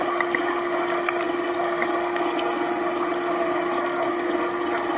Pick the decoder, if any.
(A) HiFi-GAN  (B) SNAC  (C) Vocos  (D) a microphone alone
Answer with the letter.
D